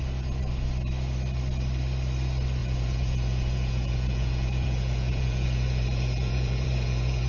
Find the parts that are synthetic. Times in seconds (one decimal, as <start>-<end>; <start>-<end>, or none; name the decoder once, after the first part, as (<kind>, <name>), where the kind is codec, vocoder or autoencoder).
2.6-7.3 (vocoder, Vocos)